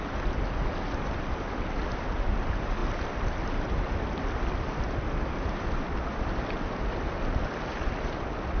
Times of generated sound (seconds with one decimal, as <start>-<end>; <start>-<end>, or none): none